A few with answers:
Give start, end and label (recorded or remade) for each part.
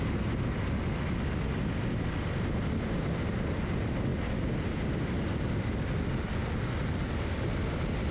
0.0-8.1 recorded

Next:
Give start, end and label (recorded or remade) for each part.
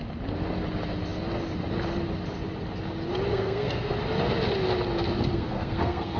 0.0-3.3 recorded; 3.3-3.9 remade; 3.9-5.3 recorded; 5.3-6.2 remade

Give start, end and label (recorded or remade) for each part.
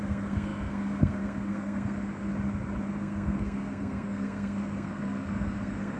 0.0-2.3 remade; 2.3-3.0 recorded; 3.0-6.0 remade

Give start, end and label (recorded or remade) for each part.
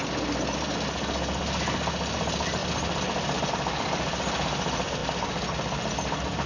0.0-6.5 recorded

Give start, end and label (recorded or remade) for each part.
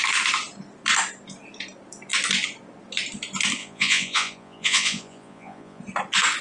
0.0-3.6 recorded; 3.6-5.8 remade; 5.8-6.4 recorded